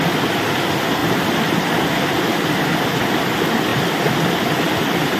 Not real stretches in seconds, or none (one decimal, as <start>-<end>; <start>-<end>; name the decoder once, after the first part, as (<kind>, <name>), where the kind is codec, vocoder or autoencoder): none

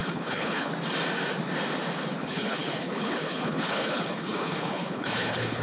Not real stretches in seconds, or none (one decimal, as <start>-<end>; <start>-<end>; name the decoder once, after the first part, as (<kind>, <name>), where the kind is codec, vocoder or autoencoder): 0.0-0.7 (codec, HILCodec); 2.2-5.6

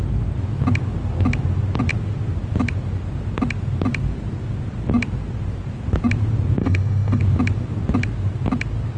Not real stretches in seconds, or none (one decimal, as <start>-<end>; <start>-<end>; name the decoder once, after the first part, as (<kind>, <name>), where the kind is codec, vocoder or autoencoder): 6.6-7.2 (autoencoder, DAC-VAE)